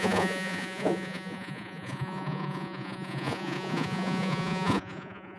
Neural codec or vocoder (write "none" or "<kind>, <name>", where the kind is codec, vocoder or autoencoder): vocoder, Vocos